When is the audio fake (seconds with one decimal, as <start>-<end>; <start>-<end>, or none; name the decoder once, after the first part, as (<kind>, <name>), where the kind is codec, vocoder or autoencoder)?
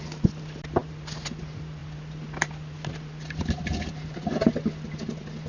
none